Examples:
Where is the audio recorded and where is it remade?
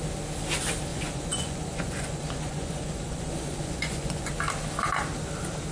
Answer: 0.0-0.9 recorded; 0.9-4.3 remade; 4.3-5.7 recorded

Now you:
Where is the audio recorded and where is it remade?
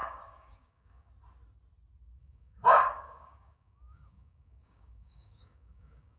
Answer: 0.0-1.1 remade; 1.1-2.2 recorded; 2.2-6.2 remade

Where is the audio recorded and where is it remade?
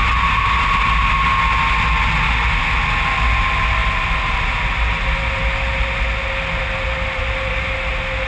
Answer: 0.0-8.3 recorded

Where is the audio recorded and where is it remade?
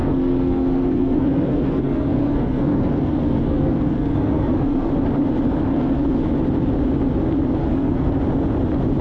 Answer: 0.0-4.9 remade; 4.9-5.7 recorded; 5.7-6.2 remade; 6.2-7.6 recorded; 7.6-8.1 remade; 8.1-9.0 recorded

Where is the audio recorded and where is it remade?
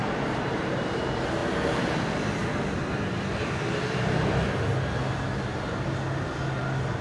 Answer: 0.0-0.6 remade; 0.6-7.0 recorded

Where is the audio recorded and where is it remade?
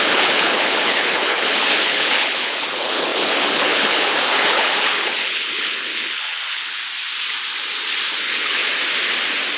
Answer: 0.0-6.8 remade; 6.8-8.2 recorded; 8.2-8.6 remade; 8.6-9.6 recorded